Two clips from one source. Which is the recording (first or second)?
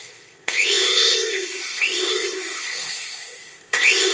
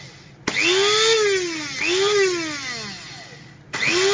second